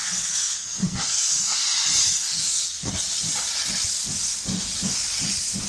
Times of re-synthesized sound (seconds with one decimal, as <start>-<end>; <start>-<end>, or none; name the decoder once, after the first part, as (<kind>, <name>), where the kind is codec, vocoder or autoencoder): 0.0-1.6 (codec, SNAC); 2.3-2.9